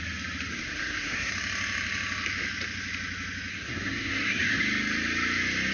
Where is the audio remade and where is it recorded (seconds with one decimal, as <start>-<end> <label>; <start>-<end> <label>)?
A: 0.0-0.5 recorded; 0.5-1.3 remade; 1.3-3.5 recorded; 3.5-4.6 remade; 4.6-5.7 recorded